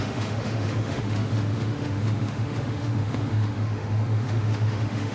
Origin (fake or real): fake